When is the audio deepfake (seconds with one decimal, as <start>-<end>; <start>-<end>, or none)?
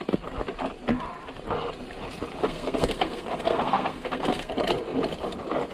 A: 2.4-4.5